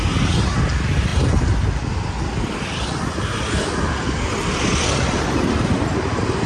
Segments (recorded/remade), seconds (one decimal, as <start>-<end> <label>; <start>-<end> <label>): 0.0-6.5 recorded